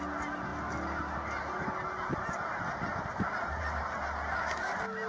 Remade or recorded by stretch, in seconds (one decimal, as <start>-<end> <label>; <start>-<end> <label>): 0.0-5.1 recorded